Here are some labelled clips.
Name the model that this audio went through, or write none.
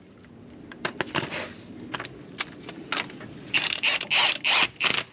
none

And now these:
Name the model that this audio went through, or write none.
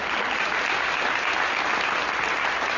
none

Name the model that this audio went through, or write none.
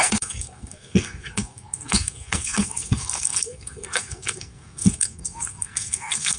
codec, SNAC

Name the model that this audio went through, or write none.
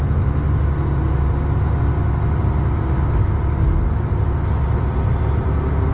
none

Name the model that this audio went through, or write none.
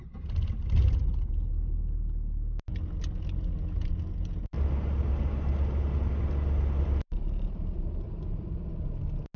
none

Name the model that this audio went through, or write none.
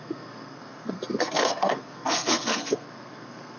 codec, SNAC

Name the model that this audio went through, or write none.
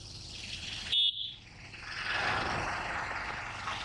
none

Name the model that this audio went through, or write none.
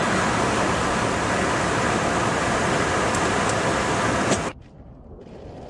none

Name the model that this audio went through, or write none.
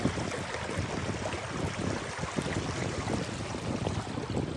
none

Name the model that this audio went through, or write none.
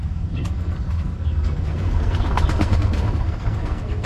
codec, SNAC